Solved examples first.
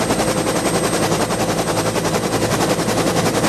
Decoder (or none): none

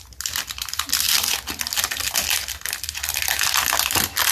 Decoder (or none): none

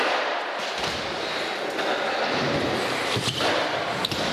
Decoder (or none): none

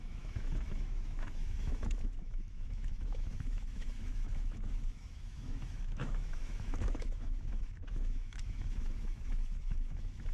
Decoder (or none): autoencoder, DAC-VAE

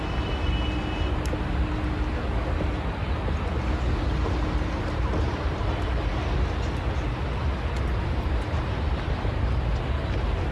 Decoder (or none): none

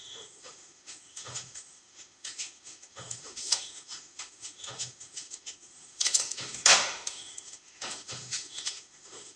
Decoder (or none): autoencoder, DAC-VAE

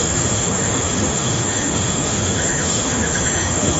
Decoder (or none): autoencoder, DAC-VAE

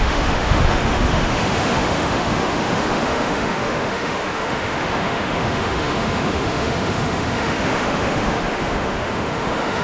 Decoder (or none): autoencoder, DAC-VAE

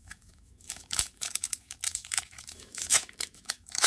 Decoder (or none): autoencoder, DAC-VAE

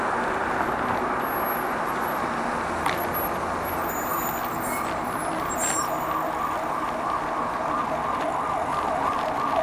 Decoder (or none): none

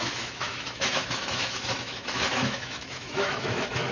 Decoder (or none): autoencoder, DAC-VAE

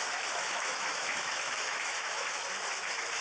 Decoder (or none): autoencoder, DAC-VAE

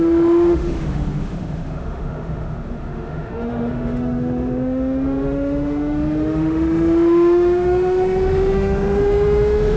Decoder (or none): autoencoder, DAC-VAE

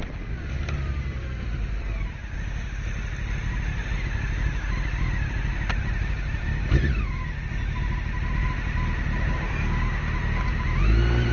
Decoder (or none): none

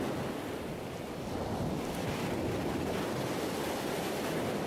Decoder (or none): none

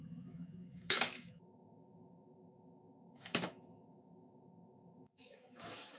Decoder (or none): autoencoder, DAC-VAE